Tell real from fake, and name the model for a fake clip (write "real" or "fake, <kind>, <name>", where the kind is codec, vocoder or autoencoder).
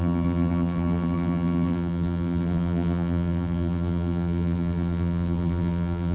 fake, vocoder, BigVGAN v2